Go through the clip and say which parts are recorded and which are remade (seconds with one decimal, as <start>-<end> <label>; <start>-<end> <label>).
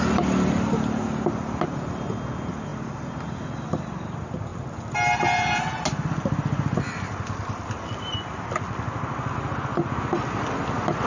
0.0-11.1 recorded